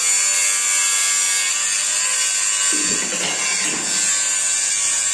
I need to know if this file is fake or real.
real